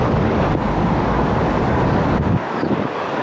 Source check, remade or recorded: remade